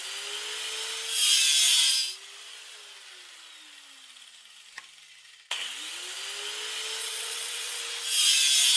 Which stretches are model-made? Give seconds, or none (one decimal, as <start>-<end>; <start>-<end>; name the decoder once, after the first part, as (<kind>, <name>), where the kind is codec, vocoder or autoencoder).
7.0-7.8 (vocoder, WaveNeXt)